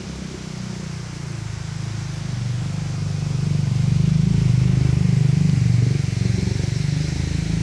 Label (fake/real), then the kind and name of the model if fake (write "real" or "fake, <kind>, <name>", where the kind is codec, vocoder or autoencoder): real